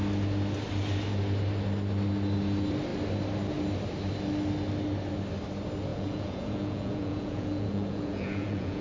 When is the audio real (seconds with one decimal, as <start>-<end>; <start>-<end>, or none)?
0.0-5.9